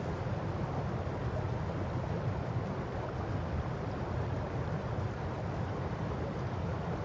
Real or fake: real